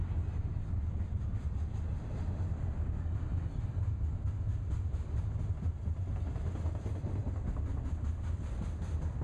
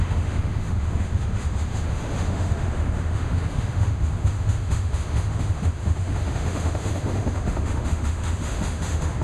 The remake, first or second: second